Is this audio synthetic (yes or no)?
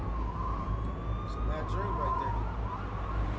no